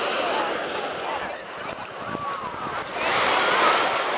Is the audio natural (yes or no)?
yes